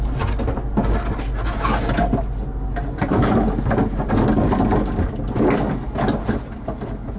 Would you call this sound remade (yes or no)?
no